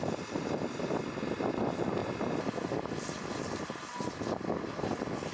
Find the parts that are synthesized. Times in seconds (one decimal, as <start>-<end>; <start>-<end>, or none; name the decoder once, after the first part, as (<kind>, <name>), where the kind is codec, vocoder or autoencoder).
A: none